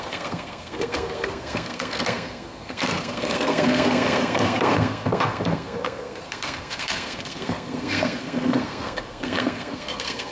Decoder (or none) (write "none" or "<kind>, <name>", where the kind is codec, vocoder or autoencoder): codec, SNAC